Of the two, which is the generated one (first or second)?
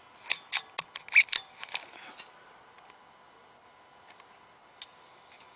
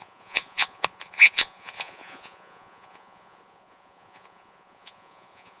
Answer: second